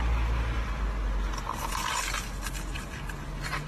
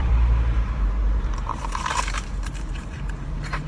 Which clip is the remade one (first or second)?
second